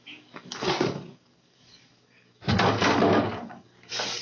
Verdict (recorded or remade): remade